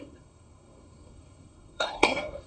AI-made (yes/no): yes